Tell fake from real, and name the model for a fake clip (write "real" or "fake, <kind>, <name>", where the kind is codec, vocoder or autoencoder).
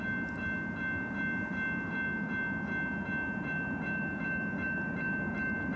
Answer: real